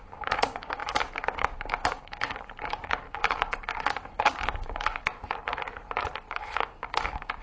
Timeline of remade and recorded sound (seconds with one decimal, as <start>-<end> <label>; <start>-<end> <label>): 0.0-5.1 remade; 5.1-6.3 recorded; 6.3-7.4 remade